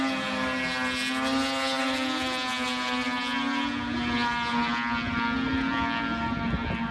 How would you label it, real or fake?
real